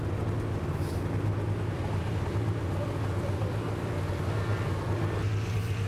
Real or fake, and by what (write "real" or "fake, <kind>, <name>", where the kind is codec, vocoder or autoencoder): real